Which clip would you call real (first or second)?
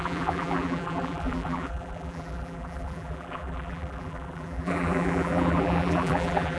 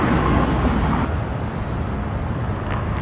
second